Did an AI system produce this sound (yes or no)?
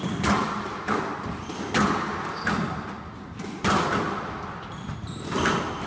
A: no